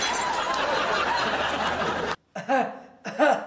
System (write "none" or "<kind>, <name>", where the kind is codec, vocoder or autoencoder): none